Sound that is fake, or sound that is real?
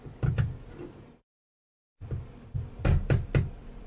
real